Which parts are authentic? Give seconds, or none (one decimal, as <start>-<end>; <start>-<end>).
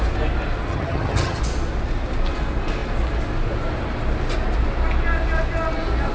0.0-0.7; 1.4-6.1